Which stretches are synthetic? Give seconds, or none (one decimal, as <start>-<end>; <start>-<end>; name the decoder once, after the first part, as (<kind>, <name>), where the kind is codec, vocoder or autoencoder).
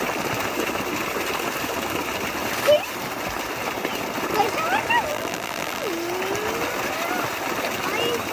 5.1-5.9 (vocoder, BigVGAN v2)